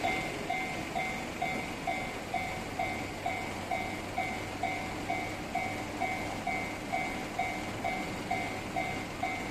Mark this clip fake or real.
real